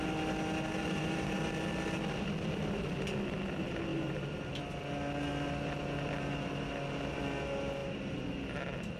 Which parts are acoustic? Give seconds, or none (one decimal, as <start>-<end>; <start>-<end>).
0.0-0.8; 1.4-3.9; 4.6-9.0